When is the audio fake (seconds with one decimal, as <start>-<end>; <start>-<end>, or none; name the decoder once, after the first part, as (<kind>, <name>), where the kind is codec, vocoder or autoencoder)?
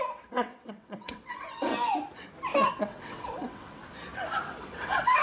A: 0.0-1.7 (vocoder, WaveNeXt); 2.7-3.8; 4.6-5.2